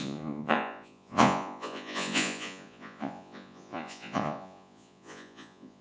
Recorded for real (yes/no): no